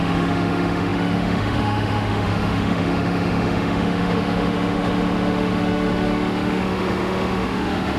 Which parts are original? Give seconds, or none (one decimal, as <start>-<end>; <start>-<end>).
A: none